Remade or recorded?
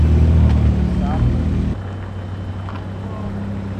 recorded